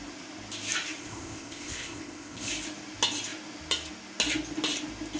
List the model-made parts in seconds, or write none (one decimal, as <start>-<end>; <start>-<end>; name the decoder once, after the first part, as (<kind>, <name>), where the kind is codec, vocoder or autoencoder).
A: 1.0-2.5 (codec, ZipCodec)